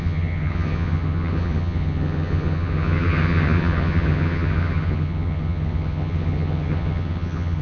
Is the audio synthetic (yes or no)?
yes